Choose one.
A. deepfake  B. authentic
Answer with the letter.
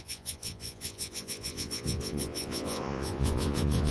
A